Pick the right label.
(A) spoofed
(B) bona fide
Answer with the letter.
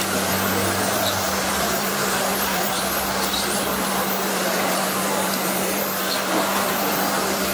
A